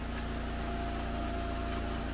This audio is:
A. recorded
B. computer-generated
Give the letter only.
A